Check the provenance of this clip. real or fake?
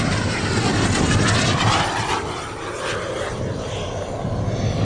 real